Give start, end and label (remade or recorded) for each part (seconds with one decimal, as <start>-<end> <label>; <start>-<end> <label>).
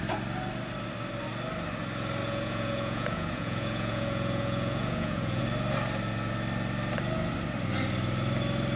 0.0-2.2 recorded; 2.2-5.4 remade; 5.4-8.8 recorded